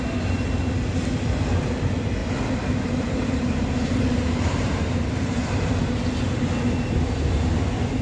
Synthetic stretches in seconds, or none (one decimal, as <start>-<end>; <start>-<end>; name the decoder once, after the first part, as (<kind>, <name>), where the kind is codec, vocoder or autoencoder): 2.2-5.7 (vocoder, BigVGAN v2)